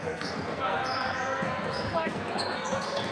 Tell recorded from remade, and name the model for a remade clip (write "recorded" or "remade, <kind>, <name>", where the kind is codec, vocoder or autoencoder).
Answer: remade, codec, SNAC